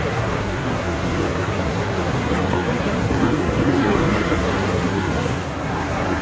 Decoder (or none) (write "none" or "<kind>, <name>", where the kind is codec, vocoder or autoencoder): codec, SNAC